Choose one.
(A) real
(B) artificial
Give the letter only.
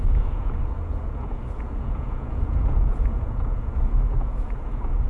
B